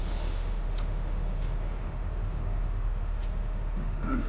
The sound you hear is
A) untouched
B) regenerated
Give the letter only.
B